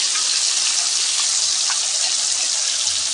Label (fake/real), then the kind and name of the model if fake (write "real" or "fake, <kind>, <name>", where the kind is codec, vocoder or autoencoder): real